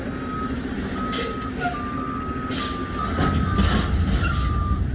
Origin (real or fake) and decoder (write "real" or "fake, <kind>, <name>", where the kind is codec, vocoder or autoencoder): real